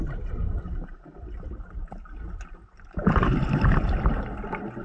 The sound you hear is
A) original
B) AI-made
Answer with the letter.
A